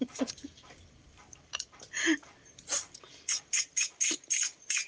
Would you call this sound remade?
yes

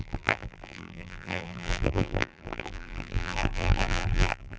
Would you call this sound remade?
yes